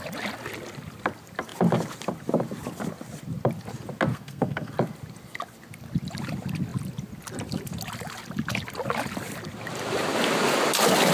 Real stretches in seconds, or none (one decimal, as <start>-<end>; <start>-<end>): 0.0-4.1; 4.7-11.1